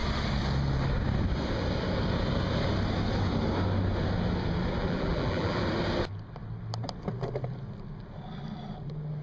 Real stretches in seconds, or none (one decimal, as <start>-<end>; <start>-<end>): 0.0-4.8; 5.6-9.2